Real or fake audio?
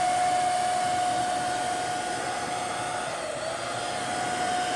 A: real